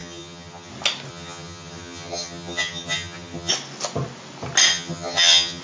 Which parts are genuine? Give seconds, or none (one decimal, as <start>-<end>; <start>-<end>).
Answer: 0.7-1.1; 3.5-4.7